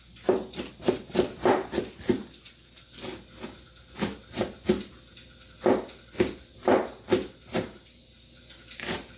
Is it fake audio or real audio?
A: real